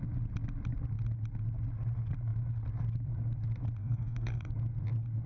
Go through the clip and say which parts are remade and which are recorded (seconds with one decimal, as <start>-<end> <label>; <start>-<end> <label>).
0.0-3.8 recorded; 3.8-4.5 remade; 4.5-5.3 recorded